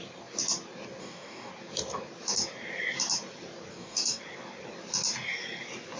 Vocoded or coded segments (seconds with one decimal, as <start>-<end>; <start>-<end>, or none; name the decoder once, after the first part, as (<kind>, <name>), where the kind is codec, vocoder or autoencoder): 1.0-1.5 (codec, DAC); 3.7-4.2